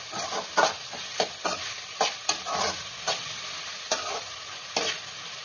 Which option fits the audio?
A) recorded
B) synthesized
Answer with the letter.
A